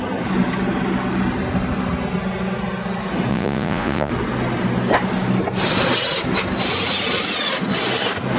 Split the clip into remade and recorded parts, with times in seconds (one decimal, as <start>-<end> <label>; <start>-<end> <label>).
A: 0.0-3.3 recorded; 3.3-4.1 remade; 4.1-8.4 recorded